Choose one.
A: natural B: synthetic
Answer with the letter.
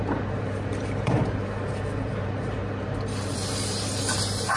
B